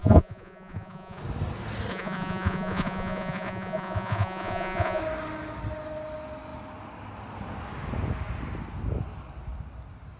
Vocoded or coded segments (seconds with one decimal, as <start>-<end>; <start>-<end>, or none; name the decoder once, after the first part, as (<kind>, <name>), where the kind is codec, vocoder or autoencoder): 0.0-1.2 (vocoder, Vocos); 1.9-5.0